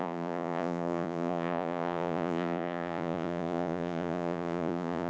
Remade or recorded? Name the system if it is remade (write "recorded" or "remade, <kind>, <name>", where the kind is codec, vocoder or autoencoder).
remade, vocoder, Vocos